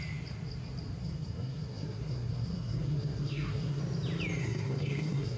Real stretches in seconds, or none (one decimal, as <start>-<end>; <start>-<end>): 0.0-1.0; 3.8-4.4